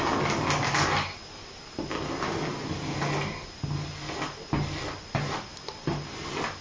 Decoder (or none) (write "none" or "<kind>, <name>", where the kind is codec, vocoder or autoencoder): none